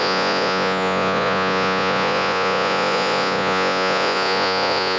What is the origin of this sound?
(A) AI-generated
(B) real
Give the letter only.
A